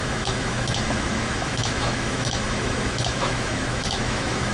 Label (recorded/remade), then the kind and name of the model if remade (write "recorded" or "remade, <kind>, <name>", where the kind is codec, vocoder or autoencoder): remade, autoencoder, DAC-VAE